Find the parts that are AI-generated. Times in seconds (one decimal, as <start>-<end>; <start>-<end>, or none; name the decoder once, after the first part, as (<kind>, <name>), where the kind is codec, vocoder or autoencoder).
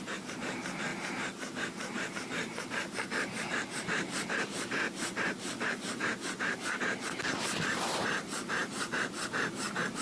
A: 0.0-10.0 (vocoder, BigVGAN v2)